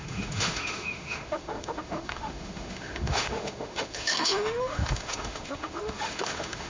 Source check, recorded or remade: remade